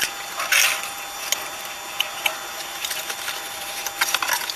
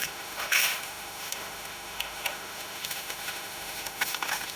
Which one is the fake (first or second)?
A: second